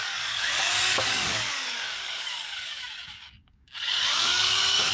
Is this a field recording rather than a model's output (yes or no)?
no